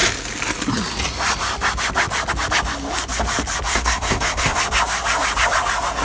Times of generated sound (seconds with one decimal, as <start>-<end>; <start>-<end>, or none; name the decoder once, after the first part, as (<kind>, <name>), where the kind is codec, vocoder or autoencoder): 3.7-4.6 (codec, SNAC)